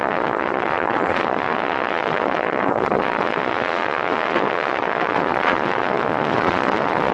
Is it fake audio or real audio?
fake